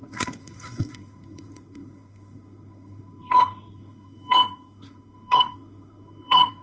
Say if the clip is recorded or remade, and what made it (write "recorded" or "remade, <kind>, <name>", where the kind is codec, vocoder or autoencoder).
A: remade, codec, SNAC